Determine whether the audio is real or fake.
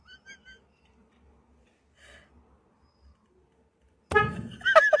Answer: real